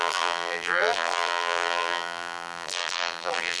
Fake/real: fake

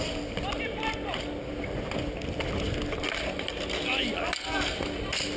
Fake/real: real